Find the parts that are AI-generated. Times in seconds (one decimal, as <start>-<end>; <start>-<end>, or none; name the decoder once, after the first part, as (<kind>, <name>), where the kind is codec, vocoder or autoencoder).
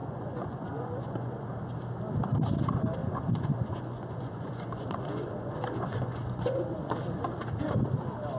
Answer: 0.0-1.5 (vocoder, Vocos); 3.0-6.9